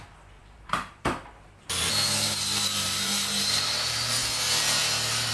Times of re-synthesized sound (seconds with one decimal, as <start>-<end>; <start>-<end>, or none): 0.4-3.6